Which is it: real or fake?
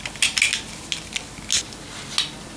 real